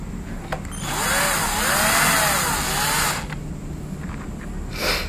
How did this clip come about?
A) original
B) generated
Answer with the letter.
A